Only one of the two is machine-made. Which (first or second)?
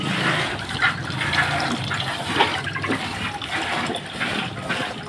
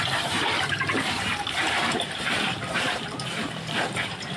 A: second